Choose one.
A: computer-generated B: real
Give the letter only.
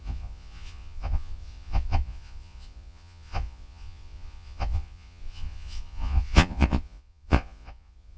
A